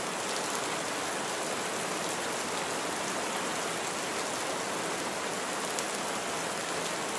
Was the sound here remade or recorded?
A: recorded